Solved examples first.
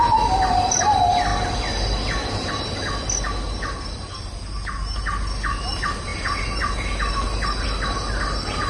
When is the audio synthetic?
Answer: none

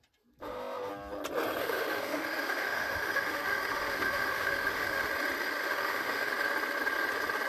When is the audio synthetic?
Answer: 0.4-0.9 (autoencoder, DAC-VAE); 1.6-5.1; 5.6-6.3

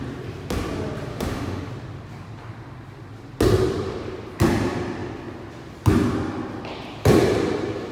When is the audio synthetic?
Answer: 1.1-1.7 (autoencoder, DAC-VAE)

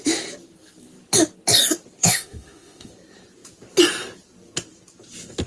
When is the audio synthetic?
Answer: 2.0-2.9 (autoencoder, DAC-VAE)

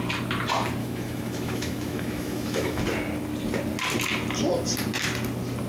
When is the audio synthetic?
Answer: 0.8-2.8 (autoencoder, DAC-VAE)